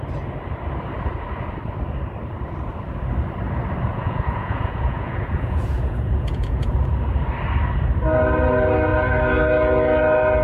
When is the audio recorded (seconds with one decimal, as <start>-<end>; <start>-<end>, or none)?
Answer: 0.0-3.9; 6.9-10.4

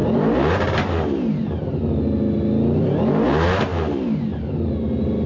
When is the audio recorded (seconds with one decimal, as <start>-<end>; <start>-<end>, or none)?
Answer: 0.0-5.3

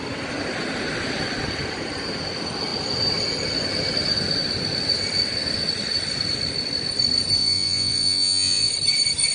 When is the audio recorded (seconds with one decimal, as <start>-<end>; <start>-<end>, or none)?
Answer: 0.0-7.4; 8.7-9.3

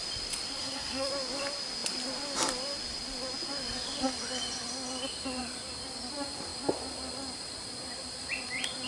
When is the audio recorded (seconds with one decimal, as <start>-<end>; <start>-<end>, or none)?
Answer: 0.0-0.6; 1.1-8.9

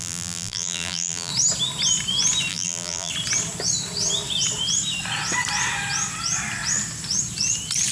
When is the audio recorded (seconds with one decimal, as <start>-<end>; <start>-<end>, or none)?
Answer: 1.3-2.5; 3.1-7.9